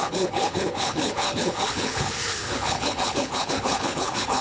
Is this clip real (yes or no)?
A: no